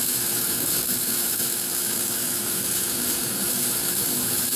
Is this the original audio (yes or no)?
no